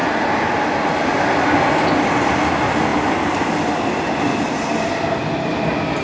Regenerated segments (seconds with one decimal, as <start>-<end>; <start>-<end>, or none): none